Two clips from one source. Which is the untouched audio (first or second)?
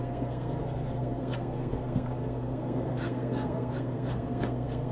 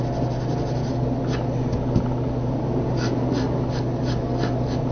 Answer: second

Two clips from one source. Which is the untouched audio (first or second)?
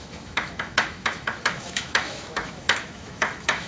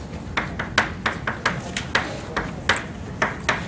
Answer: second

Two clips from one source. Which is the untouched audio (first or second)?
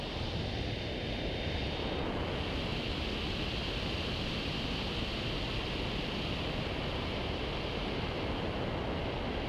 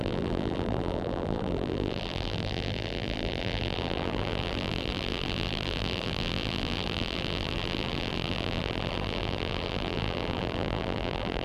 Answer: first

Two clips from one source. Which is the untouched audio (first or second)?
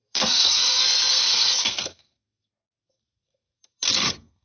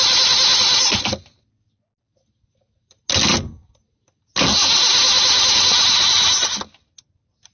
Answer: second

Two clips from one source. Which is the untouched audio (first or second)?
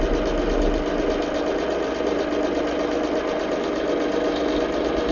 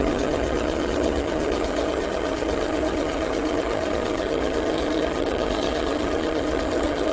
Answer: first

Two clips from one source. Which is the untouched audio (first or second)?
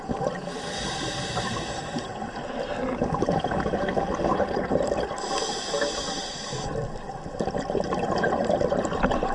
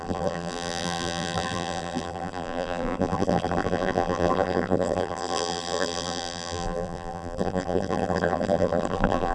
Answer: first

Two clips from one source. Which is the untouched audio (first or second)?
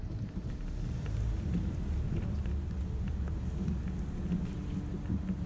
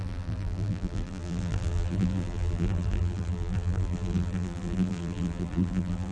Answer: first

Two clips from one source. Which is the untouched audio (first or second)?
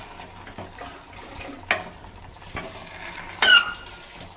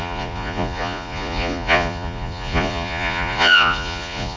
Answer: first